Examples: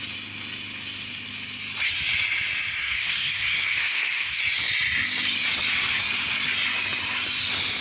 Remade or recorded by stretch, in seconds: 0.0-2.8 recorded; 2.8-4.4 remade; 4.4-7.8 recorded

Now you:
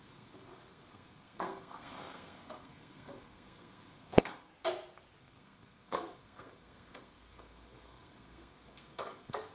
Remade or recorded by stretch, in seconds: 0.0-4.5 remade; 4.5-5.2 recorded; 5.2-9.5 remade

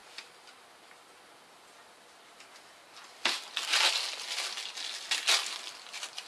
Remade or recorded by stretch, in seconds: 0.0-6.3 recorded

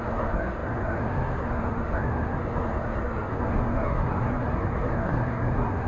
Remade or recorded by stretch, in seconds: 0.0-5.9 remade

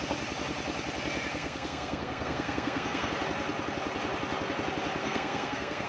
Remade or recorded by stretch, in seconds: 0.0-1.3 recorded; 1.3-3.1 remade; 3.1-5.0 recorded; 5.0-5.9 remade